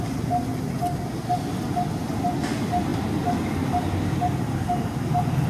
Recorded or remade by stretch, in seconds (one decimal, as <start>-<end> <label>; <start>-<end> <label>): 0.0-5.5 recorded